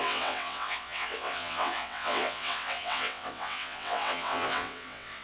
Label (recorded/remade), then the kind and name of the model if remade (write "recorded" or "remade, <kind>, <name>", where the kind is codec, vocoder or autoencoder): remade, vocoder, WaveNeXt